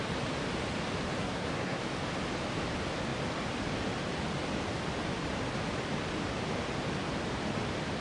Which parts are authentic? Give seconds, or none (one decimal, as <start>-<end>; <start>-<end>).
0.0-1.2; 1.8-8.0